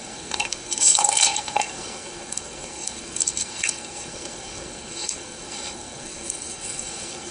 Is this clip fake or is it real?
fake